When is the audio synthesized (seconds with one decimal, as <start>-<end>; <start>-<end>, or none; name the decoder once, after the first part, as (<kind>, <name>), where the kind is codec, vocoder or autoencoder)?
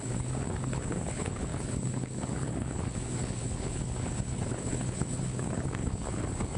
0.0-6.6 (codec, HILCodec)